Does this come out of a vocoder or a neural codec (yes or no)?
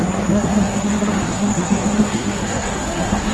yes